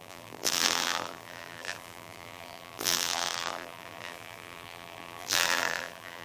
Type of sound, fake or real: fake